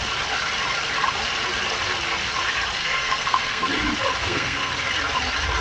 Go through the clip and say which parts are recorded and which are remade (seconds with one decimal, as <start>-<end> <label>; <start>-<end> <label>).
0.0-2.8 recorded; 2.8-3.7 remade; 3.7-4.2 recorded; 4.2-4.7 remade; 4.7-5.6 recorded